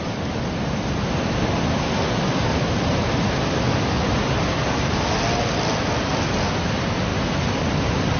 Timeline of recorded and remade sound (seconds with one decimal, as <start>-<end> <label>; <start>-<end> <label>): 0.0-8.2 recorded